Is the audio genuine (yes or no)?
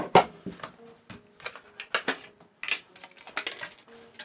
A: yes